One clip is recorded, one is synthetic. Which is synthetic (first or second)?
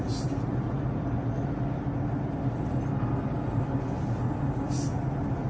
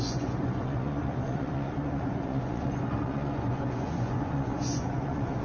second